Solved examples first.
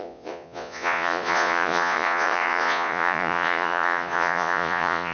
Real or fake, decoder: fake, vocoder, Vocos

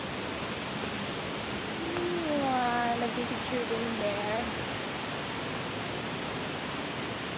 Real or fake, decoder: real